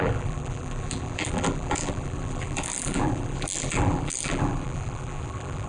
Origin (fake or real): fake